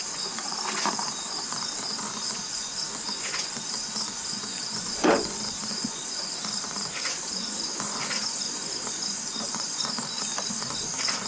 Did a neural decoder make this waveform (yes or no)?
yes